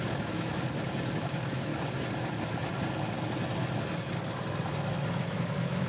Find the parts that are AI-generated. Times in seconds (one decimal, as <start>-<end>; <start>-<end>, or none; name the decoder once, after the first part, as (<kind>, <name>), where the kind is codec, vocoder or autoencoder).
0.0-0.5 (autoencoder, DAC-VAE); 1.2-1.7; 5.2-5.9